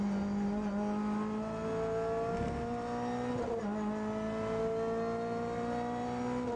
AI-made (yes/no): no